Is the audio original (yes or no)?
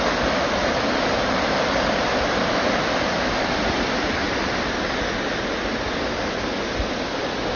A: yes